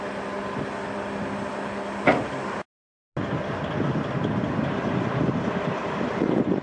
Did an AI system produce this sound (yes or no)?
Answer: no